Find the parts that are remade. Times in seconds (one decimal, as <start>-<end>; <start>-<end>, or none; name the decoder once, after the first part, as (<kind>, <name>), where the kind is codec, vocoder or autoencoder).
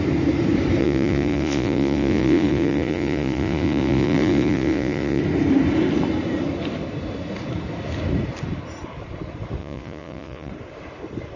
0.8-5.2 (vocoder, Vocos); 9.6-10.5